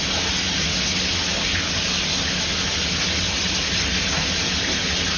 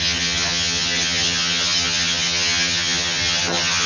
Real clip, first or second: first